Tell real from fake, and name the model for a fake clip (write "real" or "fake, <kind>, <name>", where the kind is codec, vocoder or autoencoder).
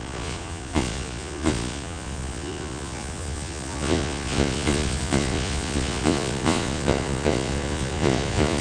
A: fake, vocoder, Vocos